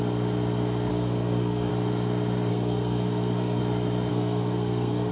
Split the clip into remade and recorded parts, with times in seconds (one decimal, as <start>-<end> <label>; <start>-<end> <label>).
0.0-0.9 recorded; 0.9-1.7 remade; 1.7-2.5 recorded; 2.5-3.6 remade; 3.6-4.1 recorded; 4.1-5.1 remade